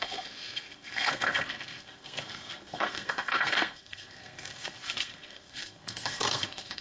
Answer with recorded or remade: remade